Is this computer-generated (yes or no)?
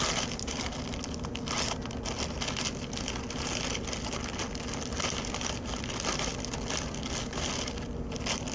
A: no